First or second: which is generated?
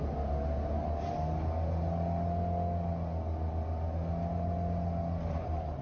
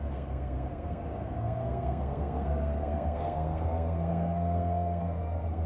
second